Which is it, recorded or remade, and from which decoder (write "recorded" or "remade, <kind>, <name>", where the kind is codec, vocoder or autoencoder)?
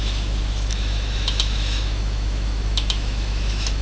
remade, autoencoder, DAC-VAE